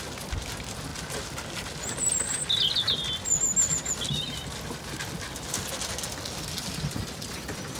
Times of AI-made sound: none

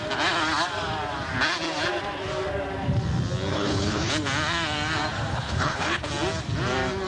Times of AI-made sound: 3.5-4.1; 5.3-6.1

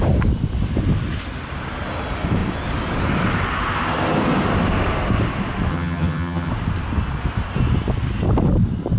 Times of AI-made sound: 5.7-6.5

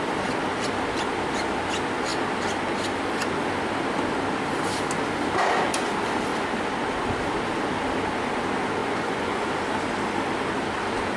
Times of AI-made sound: 8.8-9.4

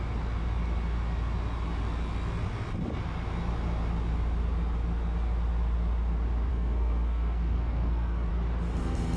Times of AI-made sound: 6.5-8.3

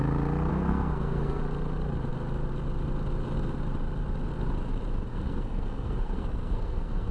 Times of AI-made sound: 0.5-1.4; 5.1-7.1

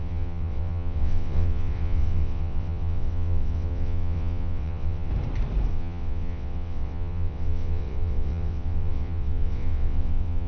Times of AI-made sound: 0.0-5.1; 5.7-10.5